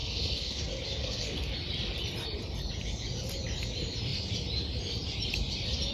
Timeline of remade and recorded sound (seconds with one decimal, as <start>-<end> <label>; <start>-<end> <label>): 0.0-0.6 remade; 0.6-1.0 recorded; 1.0-1.5 remade; 1.5-5.9 recorded